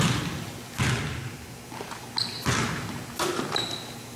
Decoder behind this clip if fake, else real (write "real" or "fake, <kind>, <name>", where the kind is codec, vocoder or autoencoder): real